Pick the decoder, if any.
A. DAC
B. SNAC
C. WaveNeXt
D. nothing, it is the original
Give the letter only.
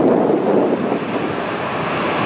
D